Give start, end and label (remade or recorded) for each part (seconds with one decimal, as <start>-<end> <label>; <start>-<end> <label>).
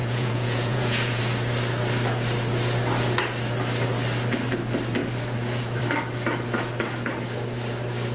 0.0-1.2 remade; 1.2-8.1 recorded